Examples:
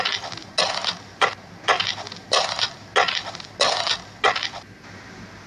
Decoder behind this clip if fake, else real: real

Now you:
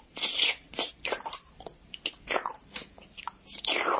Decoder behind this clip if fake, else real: fake, vocoder, BigVGAN v2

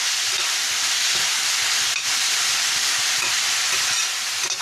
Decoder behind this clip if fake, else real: real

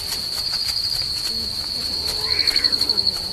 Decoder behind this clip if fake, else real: real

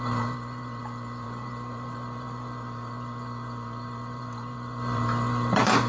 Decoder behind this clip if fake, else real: fake, vocoder, BigVGAN v2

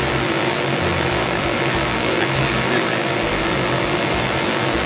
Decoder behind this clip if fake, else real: fake, vocoder, BigVGAN v2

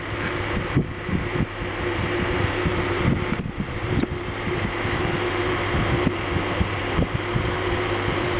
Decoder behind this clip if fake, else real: fake, vocoder, BigVGAN v2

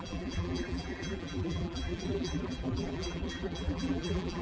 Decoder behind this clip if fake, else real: fake, vocoder, BigVGAN v2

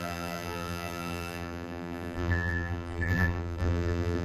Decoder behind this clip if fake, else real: fake, vocoder, BigVGAN v2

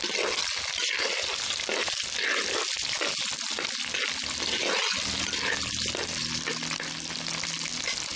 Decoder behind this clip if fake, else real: real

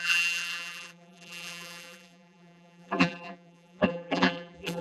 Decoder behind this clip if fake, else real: fake, vocoder, BigVGAN v2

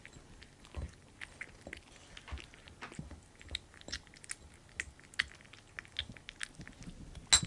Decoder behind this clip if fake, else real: real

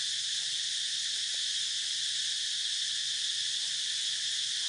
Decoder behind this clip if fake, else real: real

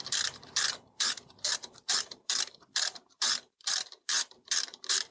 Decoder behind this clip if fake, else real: fake, vocoder, BigVGAN v2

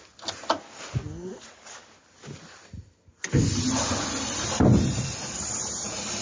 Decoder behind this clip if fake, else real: real